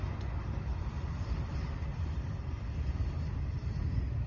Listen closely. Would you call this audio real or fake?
real